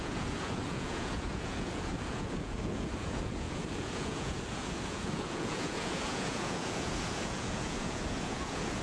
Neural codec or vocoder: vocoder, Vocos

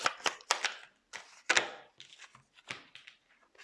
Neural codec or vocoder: none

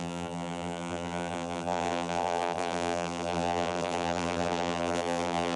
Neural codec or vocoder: vocoder, BigVGAN v2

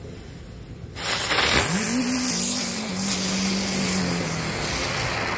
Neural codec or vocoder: none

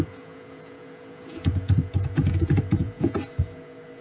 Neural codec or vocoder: vocoder, Vocos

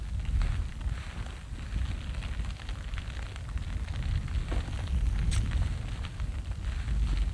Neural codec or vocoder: none